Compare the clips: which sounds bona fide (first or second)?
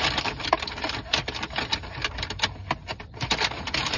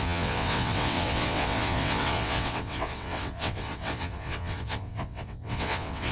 first